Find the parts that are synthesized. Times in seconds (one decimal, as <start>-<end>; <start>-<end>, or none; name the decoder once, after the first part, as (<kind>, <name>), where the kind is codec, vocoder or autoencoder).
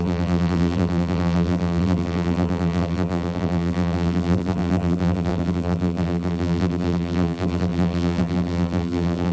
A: 0.0-9.3 (vocoder, BigVGAN v2)